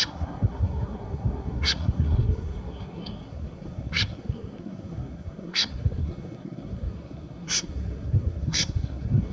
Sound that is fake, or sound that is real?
fake